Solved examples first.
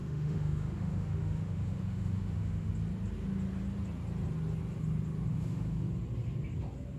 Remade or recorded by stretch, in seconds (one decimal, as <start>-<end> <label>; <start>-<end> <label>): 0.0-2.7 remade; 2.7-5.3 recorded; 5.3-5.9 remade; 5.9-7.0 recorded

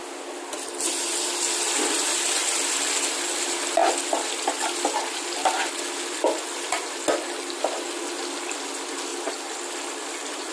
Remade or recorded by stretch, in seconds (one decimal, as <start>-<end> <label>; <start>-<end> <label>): 0.0-10.5 recorded

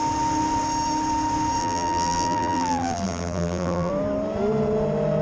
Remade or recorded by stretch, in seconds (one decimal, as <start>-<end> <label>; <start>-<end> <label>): 0.0-1.6 recorded; 1.6-3.9 remade; 3.9-5.2 recorded

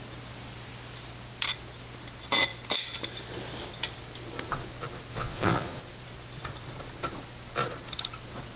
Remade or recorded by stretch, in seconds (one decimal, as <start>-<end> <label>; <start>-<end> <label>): 0.0-5.1 recorded; 5.1-5.8 remade; 5.8-8.6 recorded